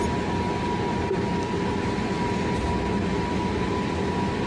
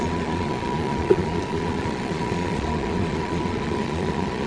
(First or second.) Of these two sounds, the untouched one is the first